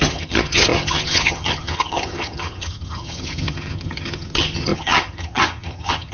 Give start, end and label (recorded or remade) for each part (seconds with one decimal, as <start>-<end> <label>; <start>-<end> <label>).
0.0-6.1 remade